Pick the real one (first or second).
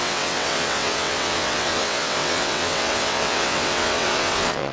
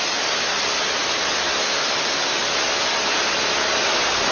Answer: second